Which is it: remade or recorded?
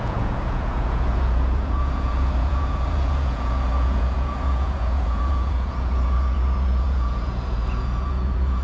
remade